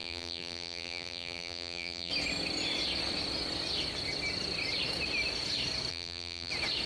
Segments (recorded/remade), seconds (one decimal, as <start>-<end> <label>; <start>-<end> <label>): 0.0-2.1 remade; 2.1-5.9 recorded; 5.9-6.5 remade; 6.5-6.9 recorded